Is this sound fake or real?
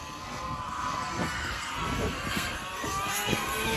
fake